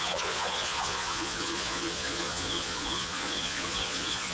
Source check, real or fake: fake